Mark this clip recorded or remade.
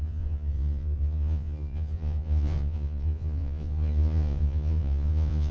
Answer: remade